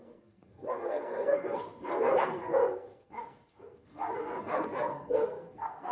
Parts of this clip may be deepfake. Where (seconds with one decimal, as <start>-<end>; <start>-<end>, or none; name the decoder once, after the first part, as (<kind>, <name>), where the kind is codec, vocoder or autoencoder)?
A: 0.0-5.9 (codec, SNAC)